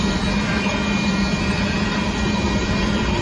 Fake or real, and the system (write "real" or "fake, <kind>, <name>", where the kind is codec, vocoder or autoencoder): real